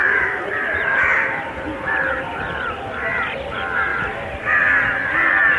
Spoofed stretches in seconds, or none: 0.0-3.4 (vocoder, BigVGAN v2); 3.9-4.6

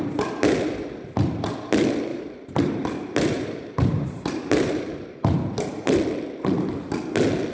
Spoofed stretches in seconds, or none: 2.1-6.0 (vocoder, BigVGAN v2)

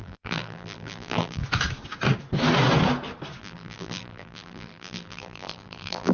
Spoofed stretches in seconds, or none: 0.0-1.4 (vocoder, BigVGAN v2); 3.4-6.1

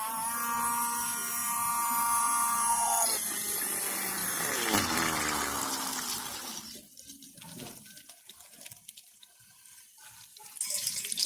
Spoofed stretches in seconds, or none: none

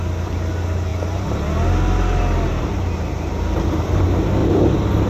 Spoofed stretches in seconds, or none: none